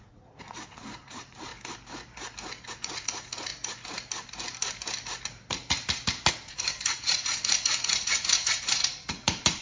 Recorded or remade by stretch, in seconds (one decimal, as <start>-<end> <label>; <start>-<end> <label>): 0.0-1.5 remade; 1.5-2.7 recorded; 2.7-3.5 remade; 3.5-6.3 recorded; 6.3-9.6 remade